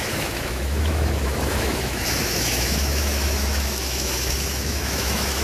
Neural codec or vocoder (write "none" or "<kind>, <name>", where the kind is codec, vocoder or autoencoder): autoencoder, DAC-VAE